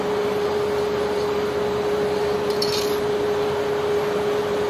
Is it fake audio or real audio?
real